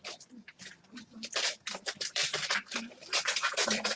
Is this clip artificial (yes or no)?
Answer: yes